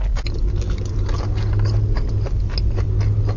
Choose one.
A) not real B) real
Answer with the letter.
B